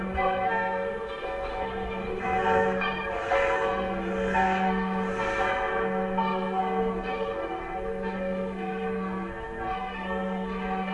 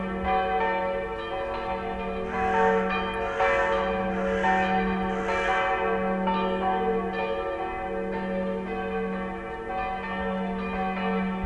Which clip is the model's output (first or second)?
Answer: first